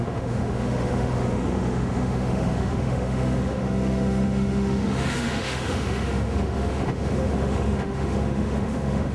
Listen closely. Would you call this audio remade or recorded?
remade